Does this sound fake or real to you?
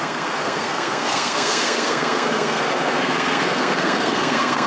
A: fake